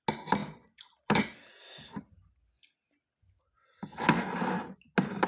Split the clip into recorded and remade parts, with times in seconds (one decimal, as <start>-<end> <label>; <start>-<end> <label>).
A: 0.0-5.3 recorded